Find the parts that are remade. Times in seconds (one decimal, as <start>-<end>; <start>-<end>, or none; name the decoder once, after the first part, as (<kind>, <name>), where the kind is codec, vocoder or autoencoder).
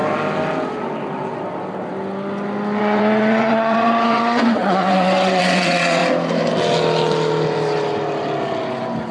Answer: 2.8-6.0 (vocoder, WaveNeXt)